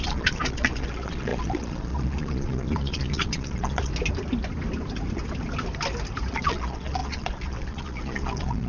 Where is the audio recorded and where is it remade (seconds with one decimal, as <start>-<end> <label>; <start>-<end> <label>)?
0.0-3.9 remade; 3.9-6.3 recorded; 6.3-8.7 remade